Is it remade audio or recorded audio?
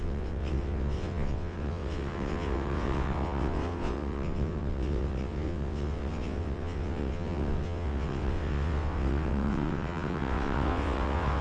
remade